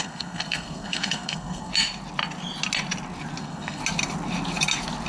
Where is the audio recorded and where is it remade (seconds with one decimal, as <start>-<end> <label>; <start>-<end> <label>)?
0.0-1.7 remade; 1.7-3.4 recorded; 3.4-3.8 remade; 3.8-5.1 recorded